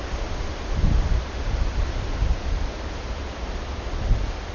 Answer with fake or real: real